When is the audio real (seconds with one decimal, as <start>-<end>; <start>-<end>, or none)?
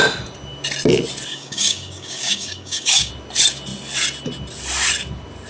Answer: 0.0-1.3; 3.1-5.5